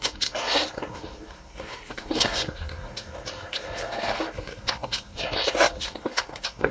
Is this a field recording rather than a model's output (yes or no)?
no